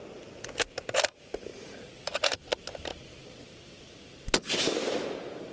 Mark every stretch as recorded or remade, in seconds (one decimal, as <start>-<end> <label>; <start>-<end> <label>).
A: 0.0-1.5 recorded; 1.5-2.1 remade; 2.1-2.9 recorded; 2.9-3.4 remade; 3.4-5.5 recorded